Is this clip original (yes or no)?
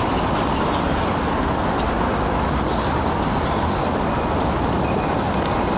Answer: yes